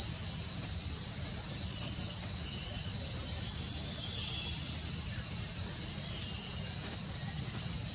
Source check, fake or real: real